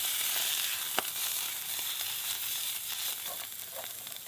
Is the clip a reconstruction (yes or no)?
no